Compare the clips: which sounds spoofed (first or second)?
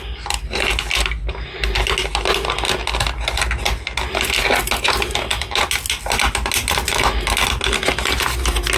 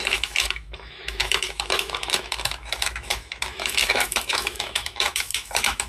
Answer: second